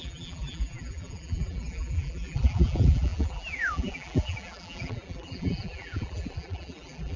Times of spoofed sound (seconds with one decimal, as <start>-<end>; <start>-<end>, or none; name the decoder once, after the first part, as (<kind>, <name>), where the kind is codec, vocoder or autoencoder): 0.0-7.2 (vocoder, BigVGAN v2)